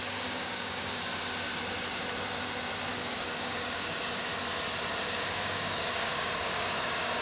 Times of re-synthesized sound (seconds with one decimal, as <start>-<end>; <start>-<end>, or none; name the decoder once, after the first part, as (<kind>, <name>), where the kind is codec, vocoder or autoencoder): 0.0-1.1 (codec, DAC); 2.9-4.3; 5.1-7.2